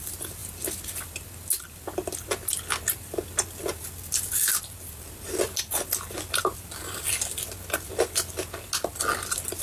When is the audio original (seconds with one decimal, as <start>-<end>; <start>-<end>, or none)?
0.0-9.6